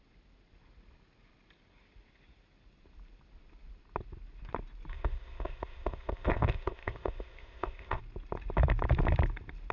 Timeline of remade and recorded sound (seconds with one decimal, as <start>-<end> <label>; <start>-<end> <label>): 0.0-4.9 recorded; 4.9-8.0 remade; 8.0-9.7 recorded